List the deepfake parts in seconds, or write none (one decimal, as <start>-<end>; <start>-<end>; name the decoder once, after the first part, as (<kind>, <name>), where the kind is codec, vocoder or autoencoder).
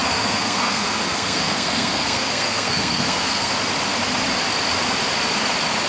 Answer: 0.0-3.5 (codec, SNAC)